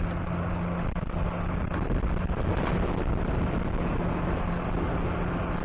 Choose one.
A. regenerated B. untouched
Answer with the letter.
B